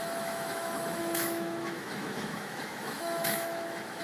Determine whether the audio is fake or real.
fake